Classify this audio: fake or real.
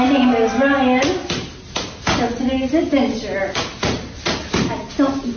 real